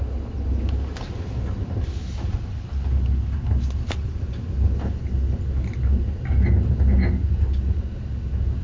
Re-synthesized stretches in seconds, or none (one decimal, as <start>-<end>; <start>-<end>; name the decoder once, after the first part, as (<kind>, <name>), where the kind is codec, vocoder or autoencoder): none